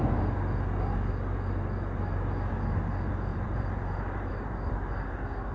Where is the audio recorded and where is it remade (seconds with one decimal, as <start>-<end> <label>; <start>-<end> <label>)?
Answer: 0.0-3.3 recorded; 3.3-4.7 remade; 4.7-5.5 recorded